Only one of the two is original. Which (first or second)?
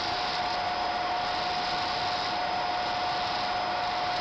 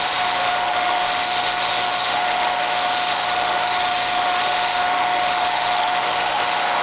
first